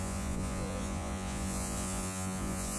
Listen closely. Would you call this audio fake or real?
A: fake